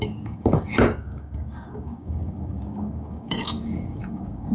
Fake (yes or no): yes